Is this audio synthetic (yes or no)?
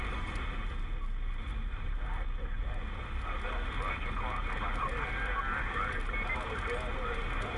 no